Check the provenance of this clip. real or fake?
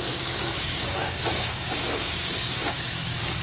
fake